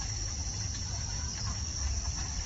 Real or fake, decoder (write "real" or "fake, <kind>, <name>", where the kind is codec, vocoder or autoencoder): real